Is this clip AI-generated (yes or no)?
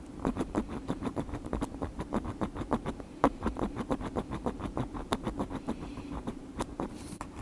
yes